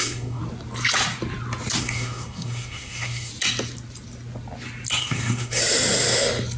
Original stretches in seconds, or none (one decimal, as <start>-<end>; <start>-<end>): 0.4-1.8; 3.3-5.0; 5.6-6.6